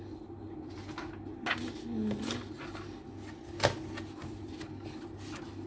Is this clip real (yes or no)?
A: yes